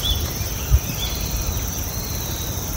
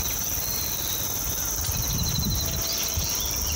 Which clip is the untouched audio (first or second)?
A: second